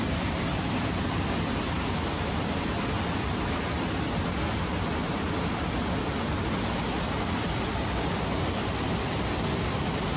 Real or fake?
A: real